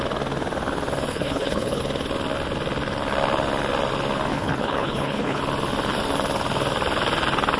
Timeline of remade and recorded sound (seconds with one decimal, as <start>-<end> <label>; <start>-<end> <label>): 0.0-1.1 recorded; 1.1-1.8 remade; 1.8-4.3 recorded; 4.3-5.4 remade; 5.4-7.6 recorded